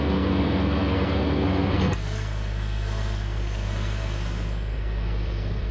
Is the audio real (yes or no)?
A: no